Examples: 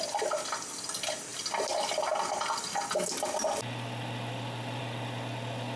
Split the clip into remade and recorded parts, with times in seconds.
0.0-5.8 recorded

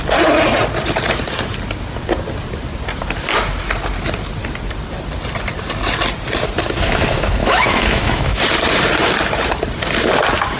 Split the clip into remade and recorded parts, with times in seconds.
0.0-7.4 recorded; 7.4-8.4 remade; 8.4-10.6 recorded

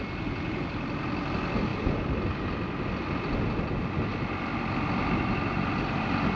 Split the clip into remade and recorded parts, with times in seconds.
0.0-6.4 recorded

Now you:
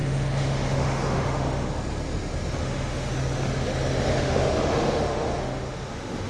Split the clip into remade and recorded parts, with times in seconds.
0.0-1.7 remade; 1.7-2.6 recorded; 2.6-3.1 remade; 3.1-4.1 recorded; 4.1-6.3 remade

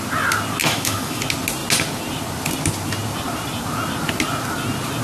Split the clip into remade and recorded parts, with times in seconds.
0.0-0.6 recorded; 0.6-1.2 remade; 1.2-5.0 recorded